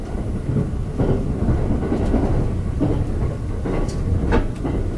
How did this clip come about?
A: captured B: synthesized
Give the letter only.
A